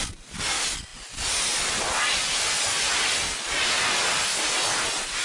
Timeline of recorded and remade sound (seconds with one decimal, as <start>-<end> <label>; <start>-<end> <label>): 0.0-5.2 recorded